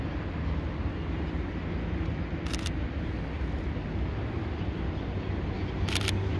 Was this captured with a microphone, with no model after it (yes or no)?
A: yes